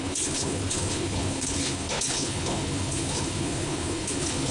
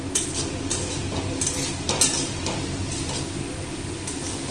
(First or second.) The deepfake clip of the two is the first